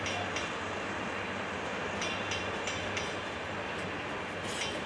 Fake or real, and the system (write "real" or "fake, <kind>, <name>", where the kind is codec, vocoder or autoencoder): real